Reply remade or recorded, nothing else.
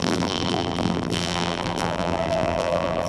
remade